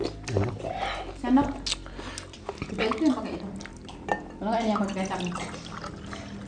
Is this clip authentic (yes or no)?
yes